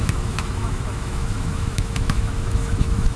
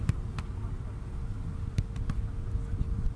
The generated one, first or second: first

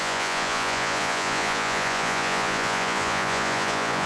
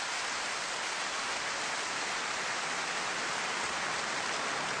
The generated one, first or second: first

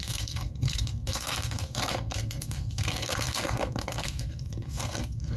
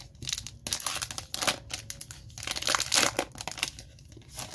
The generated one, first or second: first